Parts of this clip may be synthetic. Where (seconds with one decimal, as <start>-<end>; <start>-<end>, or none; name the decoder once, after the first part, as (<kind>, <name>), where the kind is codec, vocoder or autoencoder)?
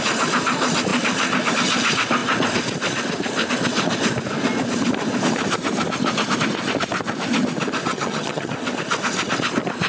7.9-8.5 (vocoder, HiFi-GAN)